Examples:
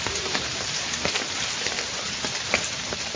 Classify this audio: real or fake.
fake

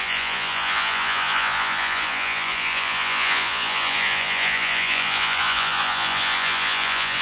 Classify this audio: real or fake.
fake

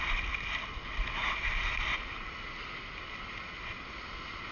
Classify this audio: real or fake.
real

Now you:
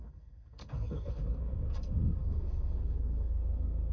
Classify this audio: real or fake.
fake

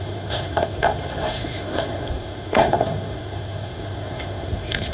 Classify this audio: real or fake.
fake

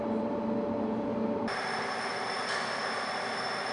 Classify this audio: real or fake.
real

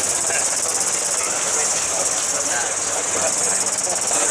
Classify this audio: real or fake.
real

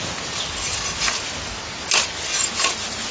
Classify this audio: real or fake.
real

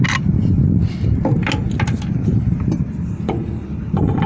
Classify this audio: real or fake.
real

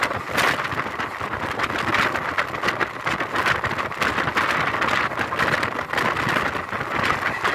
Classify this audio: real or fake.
real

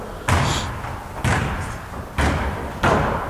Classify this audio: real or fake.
real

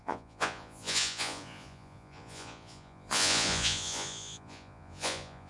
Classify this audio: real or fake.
fake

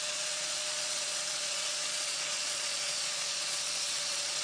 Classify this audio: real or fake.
fake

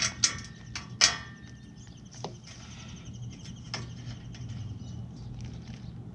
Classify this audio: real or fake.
real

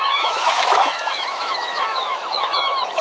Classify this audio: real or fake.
fake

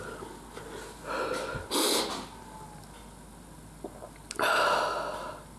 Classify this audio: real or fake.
real